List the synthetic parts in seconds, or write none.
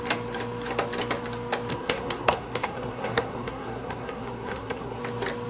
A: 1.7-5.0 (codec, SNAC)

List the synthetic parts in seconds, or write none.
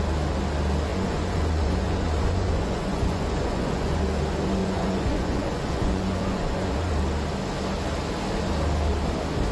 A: 0.9-4.0 (vocoder, Vocos); 4.6-6.9